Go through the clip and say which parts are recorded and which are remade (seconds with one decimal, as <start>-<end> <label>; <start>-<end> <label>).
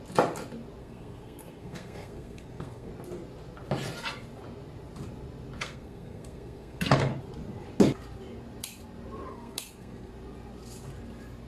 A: 0.0-0.8 recorded; 0.8-2.9 remade; 2.9-5.6 recorded; 5.6-7.1 remade; 7.1-9.3 recorded; 9.3-10.1 remade; 10.1-11.5 recorded